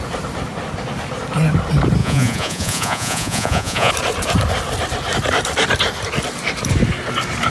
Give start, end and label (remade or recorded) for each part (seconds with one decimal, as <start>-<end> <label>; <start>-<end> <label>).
0.0-2.0 recorded; 2.0-3.9 remade; 3.9-7.5 recorded